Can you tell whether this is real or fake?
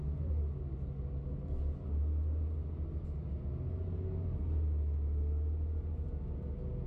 real